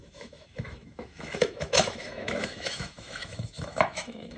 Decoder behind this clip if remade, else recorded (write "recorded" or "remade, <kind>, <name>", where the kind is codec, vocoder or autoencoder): remade, autoencoder, DAC-VAE